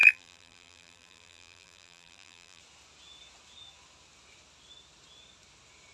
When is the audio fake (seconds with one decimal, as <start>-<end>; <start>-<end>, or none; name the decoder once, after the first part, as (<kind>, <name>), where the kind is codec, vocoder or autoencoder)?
0.0-2.6 (vocoder, BigVGAN v2)